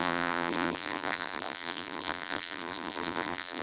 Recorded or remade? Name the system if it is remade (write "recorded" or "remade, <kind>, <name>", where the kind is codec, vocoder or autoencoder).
remade, vocoder, BigVGAN v2